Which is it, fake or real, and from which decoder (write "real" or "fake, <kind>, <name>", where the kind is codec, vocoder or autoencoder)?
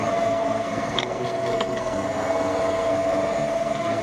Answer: fake, codec, SNAC